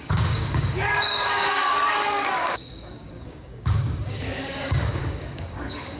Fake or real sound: fake